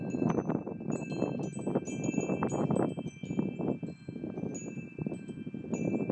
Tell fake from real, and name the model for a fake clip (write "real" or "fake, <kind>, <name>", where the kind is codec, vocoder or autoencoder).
real